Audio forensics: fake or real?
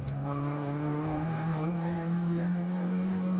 fake